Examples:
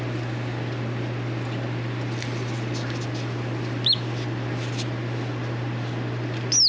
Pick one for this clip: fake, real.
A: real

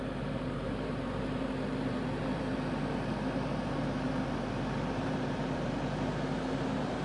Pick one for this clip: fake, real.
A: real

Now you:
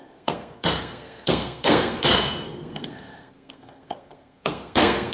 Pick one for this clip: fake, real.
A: fake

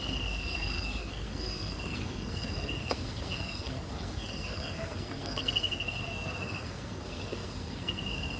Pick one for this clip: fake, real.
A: fake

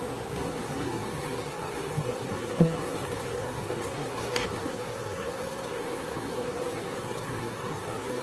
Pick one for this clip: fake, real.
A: fake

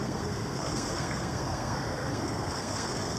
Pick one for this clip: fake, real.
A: fake